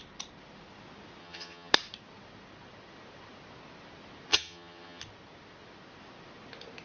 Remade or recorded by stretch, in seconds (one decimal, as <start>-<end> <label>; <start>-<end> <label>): 0.0-1.2 recorded; 1.2-1.7 remade; 1.7-4.3 recorded; 4.3-5.0 remade; 5.0-6.8 recorded